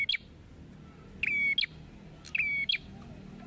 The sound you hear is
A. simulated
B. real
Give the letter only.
B